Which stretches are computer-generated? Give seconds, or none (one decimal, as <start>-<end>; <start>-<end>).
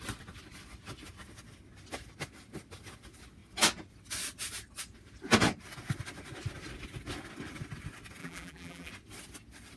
8.2-8.9